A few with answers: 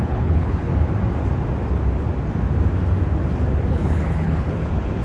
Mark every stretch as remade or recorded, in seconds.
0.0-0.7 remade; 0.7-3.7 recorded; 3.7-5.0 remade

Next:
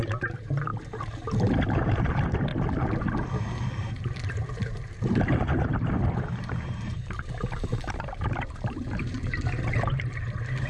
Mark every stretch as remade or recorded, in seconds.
0.0-2.5 remade; 2.5-3.9 recorded; 3.9-10.7 remade

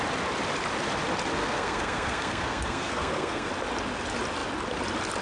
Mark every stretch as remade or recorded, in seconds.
0.0-1.4 recorded; 1.4-3.5 remade; 3.5-5.2 recorded